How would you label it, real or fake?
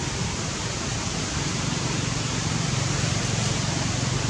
fake